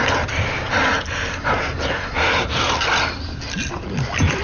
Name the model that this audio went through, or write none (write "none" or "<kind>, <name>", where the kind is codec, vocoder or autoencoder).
none